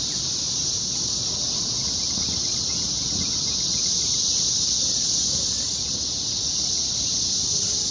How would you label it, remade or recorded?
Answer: recorded